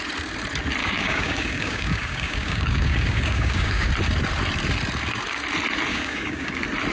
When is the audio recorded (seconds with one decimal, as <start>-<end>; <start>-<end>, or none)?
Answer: 0.0-0.8; 3.9-5.9; 6.5-6.9